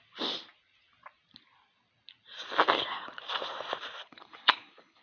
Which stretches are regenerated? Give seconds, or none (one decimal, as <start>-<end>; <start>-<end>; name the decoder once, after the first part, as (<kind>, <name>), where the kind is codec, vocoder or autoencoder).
4.0-5.0 (codec, HILCodec)